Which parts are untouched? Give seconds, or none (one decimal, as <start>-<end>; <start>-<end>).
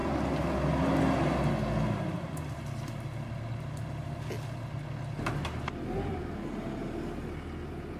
0.0-8.0